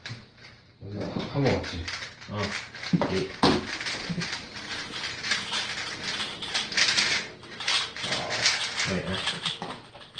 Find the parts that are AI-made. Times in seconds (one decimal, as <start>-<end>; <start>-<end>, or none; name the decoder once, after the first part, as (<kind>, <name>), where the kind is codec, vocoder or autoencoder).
0.0-1.8 (vocoder, BigVGAN v2); 3.2-7.7